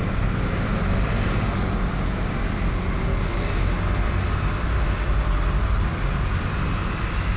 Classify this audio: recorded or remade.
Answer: recorded